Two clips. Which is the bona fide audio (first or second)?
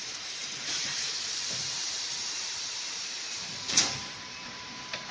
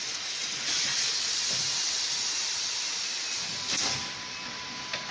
second